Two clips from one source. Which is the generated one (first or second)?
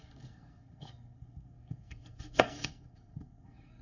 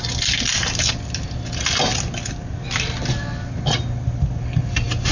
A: first